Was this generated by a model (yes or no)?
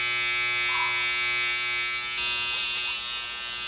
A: no